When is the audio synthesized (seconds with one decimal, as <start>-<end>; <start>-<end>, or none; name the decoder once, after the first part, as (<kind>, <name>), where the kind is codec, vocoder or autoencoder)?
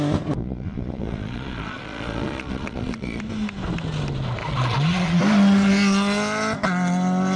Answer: 0.4-3.2 (vocoder, Vocos); 4.4-5.2